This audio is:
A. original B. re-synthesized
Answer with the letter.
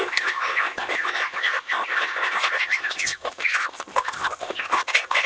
B